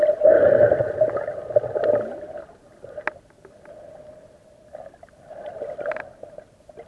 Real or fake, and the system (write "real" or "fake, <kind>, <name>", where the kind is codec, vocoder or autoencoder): real